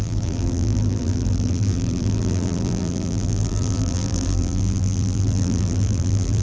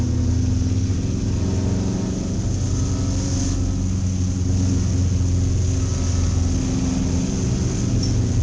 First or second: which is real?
second